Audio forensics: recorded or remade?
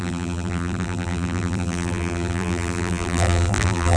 remade